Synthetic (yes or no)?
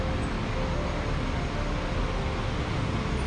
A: no